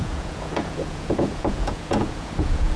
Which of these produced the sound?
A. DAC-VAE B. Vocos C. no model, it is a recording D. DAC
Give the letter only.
B